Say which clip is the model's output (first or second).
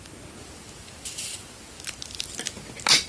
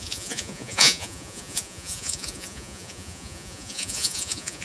second